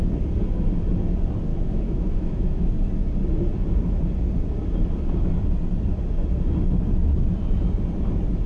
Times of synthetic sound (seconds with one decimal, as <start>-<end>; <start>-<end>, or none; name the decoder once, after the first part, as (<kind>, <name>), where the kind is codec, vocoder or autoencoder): 1.5-2.7 (autoencoder, DAC-VAE)